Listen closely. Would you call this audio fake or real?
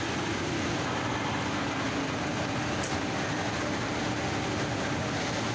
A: real